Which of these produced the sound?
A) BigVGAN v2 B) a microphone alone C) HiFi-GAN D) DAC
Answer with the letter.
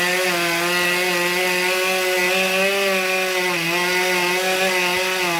B